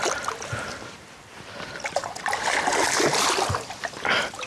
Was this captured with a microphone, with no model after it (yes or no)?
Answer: yes